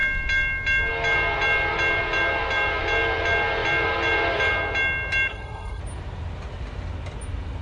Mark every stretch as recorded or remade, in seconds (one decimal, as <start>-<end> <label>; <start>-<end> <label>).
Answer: 0.0-5.3 recorded; 5.3-5.8 remade; 5.8-7.6 recorded